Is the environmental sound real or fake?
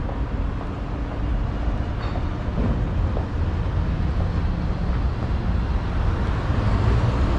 real